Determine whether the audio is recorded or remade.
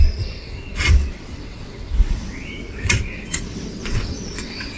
remade